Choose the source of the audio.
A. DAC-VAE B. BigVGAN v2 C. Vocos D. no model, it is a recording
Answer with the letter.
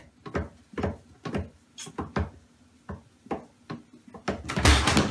D